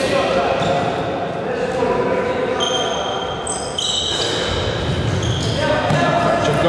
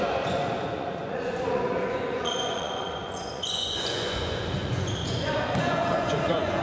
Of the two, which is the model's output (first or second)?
second